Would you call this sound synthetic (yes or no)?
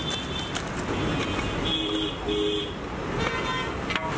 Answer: no